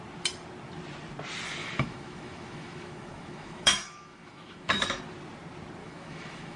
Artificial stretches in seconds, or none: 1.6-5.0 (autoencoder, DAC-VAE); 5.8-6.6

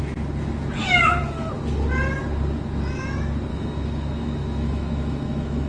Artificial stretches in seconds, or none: 0.8-1.5 (autoencoder, DAC-VAE); 3.5-5.7

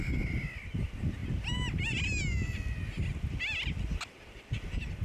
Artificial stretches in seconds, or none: none

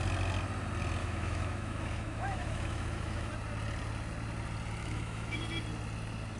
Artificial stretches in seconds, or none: 1.0-3.3 (autoencoder, DAC-VAE); 4.8-5.4

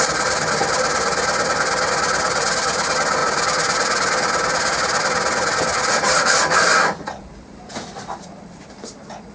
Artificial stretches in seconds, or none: none

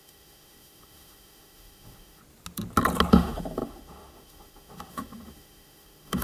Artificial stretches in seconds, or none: 0.0-2.2 (autoencoder, DAC-VAE); 3.1-6.2

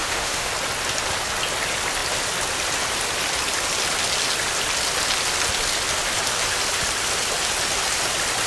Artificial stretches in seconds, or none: 0.0-0.5 (autoencoder, DAC-VAE)